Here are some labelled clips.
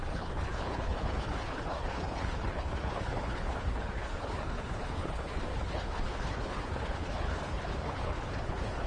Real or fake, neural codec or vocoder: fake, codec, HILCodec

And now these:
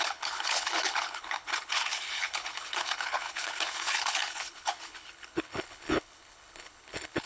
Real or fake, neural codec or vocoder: fake, codec, HILCodec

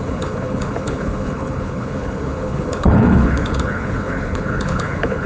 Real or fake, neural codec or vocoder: fake, codec, HILCodec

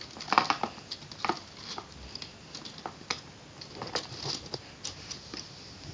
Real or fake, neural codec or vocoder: real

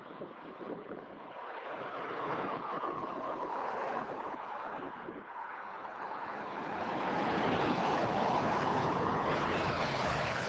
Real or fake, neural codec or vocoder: fake, codec, HILCodec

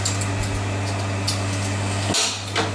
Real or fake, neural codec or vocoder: real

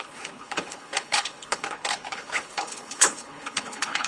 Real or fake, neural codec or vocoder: fake, codec, HILCodec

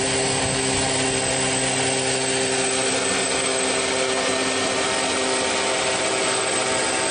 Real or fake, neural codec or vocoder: real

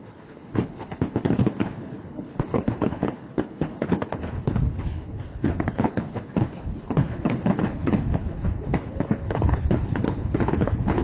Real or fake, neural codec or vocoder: fake, codec, HILCodec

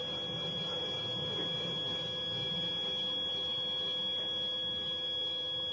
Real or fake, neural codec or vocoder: real